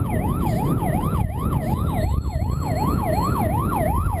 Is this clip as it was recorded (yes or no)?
no